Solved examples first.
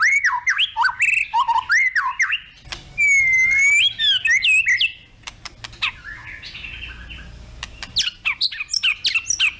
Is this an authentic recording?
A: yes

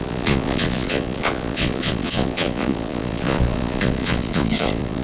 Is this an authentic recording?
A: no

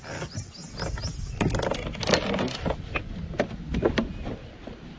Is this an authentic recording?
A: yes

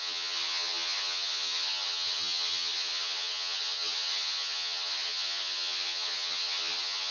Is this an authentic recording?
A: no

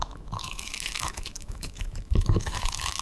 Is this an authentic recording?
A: no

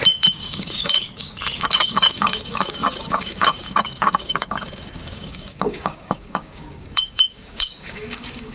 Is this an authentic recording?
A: no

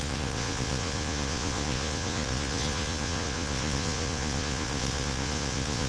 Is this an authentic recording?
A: no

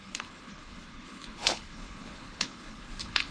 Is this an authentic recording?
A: no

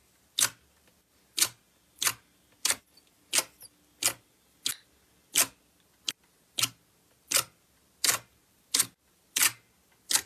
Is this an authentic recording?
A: yes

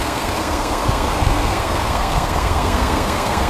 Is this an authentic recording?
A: no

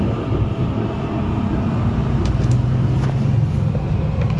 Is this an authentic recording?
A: yes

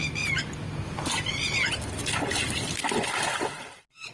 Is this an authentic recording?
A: yes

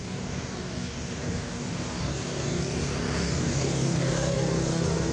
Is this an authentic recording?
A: no